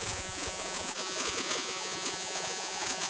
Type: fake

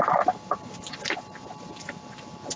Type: real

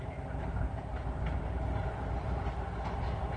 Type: fake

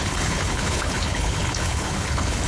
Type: fake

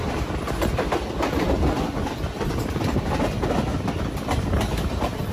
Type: real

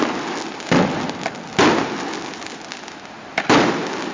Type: real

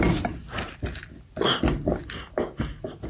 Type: real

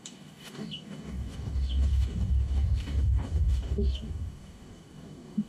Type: fake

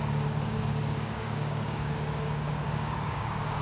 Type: fake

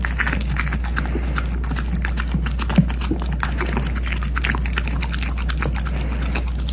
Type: real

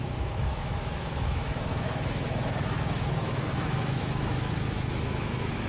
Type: fake